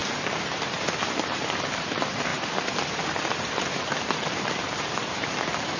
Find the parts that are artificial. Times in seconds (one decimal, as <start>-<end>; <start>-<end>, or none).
0.0-5.8

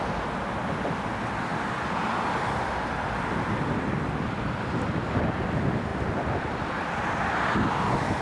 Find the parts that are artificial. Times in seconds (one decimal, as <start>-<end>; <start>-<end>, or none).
1.5-4.8; 5.9-7.2

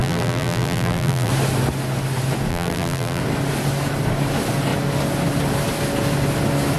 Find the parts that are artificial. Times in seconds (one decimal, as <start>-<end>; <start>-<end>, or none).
0.0-1.3; 2.5-3.2

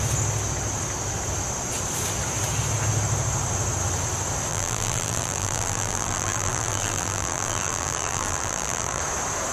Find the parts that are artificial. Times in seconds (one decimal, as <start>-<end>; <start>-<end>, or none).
4.5-9.0

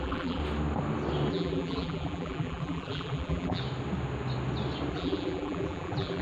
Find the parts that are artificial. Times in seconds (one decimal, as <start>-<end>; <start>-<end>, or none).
0.0-0.4; 1.3-3.6; 4.9-6.2

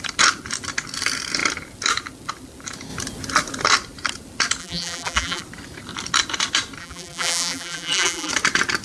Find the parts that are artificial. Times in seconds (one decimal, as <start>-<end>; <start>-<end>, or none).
4.6-5.4; 6.8-8.3

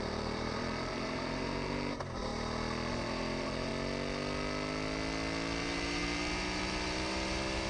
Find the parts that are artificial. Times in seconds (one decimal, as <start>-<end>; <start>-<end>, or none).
0.0-2.3; 2.9-3.7; 5.6-7.7

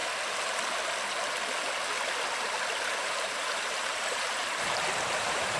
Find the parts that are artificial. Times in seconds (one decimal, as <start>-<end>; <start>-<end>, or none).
3.0-5.6